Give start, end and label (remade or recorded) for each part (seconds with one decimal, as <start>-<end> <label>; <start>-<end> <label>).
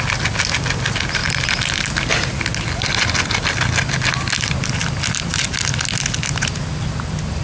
0.0-7.4 recorded